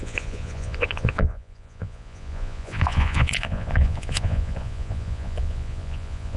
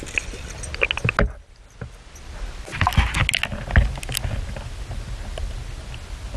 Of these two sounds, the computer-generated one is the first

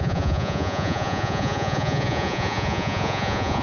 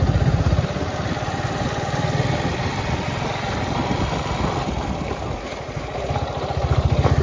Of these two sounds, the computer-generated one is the first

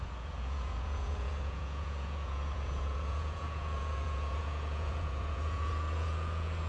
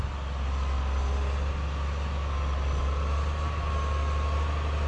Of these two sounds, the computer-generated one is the first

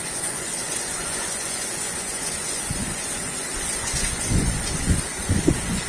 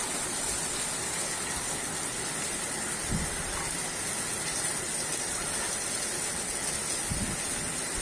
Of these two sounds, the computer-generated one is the first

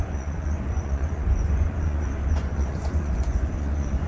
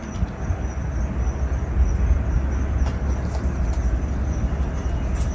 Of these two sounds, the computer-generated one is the first